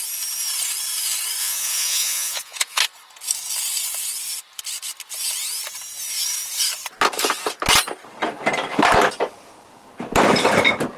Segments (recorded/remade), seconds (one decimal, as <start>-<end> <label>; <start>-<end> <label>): 0.0-1.4 recorded; 1.4-2.8 remade; 2.8-11.0 recorded